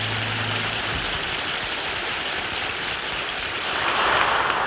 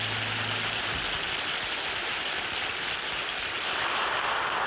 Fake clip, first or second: first